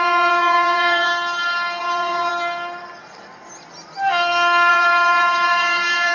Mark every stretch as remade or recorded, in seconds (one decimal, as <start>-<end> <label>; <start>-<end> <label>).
0.0-1.1 remade; 1.1-1.8 recorded; 1.8-2.3 remade; 2.3-4.7 recorded; 4.7-6.1 remade